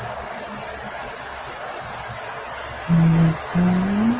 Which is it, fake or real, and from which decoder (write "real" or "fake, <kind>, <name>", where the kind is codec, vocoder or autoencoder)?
real